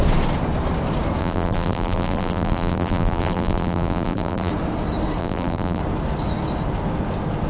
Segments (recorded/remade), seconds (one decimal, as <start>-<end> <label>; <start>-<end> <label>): 0.0-1.2 recorded; 1.2-4.5 remade; 4.5-5.2 recorded; 5.2-5.8 remade; 5.8-7.5 recorded

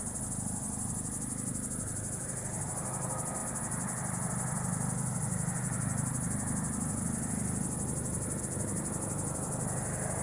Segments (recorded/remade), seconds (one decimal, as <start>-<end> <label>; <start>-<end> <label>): 0.0-10.2 recorded

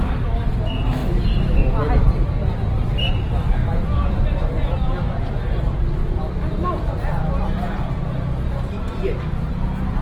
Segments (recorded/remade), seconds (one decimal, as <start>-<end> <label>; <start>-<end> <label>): 0.0-10.0 recorded